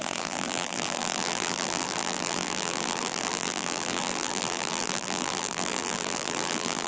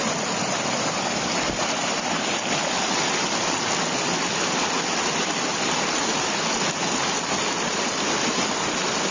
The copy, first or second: first